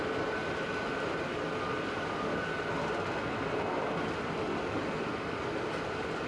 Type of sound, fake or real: real